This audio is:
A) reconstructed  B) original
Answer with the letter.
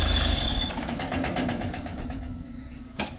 A